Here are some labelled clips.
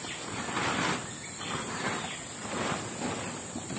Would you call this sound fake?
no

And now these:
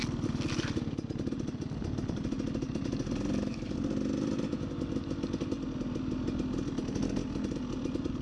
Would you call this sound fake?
no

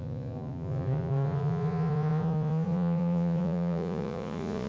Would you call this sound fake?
yes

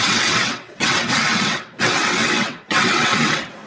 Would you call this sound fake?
yes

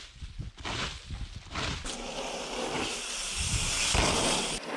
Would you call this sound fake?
no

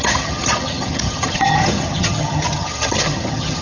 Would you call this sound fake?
yes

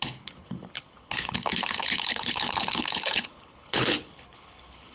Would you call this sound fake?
yes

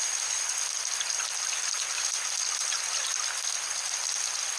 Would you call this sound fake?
no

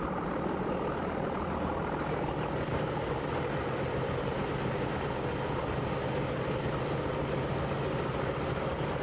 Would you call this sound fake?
no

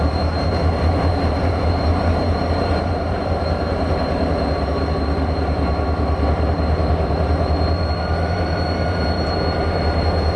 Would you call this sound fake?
yes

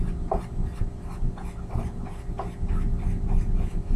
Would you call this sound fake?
no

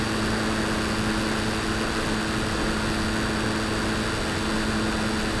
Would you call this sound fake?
no